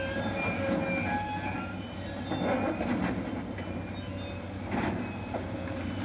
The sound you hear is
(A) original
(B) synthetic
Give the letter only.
A